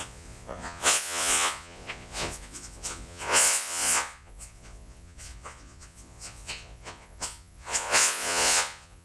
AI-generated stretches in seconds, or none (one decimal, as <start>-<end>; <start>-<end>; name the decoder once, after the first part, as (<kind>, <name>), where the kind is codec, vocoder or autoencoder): 0.0-9.0 (vocoder, Vocos)